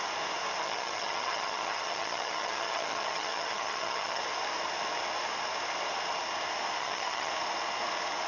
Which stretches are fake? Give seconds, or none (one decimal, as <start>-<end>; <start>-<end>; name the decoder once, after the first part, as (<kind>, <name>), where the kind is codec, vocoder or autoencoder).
0.6-4.2 (vocoder, HiFi-GAN); 6.8-7.3